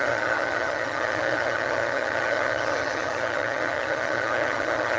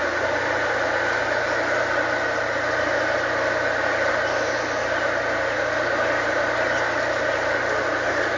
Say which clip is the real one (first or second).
second